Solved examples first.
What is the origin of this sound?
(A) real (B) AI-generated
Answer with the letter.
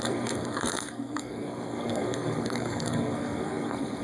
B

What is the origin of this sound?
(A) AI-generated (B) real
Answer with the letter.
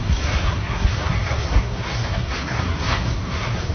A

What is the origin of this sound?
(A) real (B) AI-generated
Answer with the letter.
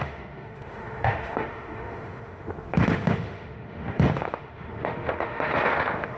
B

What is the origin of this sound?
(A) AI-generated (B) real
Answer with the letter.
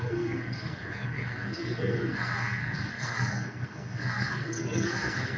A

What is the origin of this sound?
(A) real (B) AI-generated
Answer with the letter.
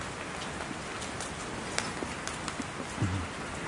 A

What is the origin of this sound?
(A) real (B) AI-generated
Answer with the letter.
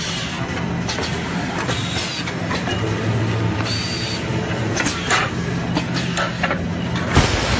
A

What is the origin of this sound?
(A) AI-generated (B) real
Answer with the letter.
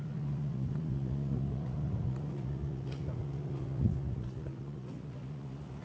A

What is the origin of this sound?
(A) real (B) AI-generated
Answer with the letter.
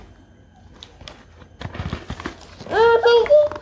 A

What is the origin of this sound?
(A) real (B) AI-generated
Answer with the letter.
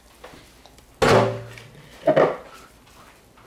A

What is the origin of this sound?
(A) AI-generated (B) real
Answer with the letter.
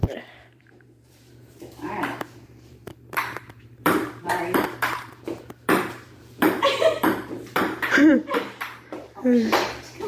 A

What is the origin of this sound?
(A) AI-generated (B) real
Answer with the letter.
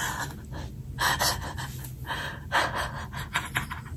B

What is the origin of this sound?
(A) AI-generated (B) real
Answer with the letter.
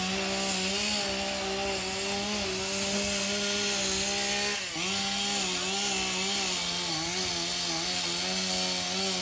B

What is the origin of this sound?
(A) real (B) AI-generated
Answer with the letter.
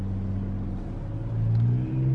A